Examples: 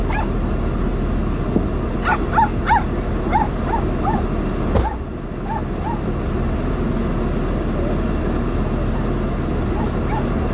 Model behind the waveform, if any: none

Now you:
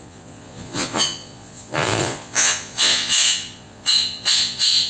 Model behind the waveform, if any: vocoder, Vocos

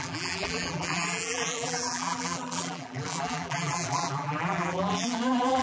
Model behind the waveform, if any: vocoder, BigVGAN v2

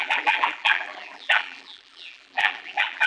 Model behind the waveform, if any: vocoder, BigVGAN v2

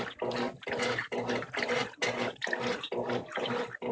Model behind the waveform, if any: none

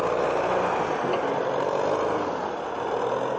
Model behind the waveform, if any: none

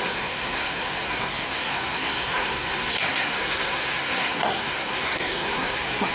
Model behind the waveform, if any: codec, SNAC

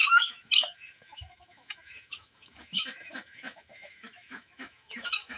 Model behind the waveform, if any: autoencoder, DAC-VAE